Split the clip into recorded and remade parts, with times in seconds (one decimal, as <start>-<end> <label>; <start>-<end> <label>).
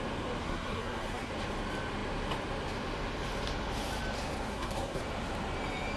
0.0-0.4 recorded; 0.4-1.3 remade; 1.3-4.5 recorded; 4.5-5.0 remade; 5.0-6.0 recorded